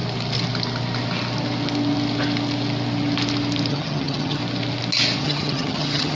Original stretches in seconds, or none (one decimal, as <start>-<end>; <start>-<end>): 0.0-3.7; 4.4-5.2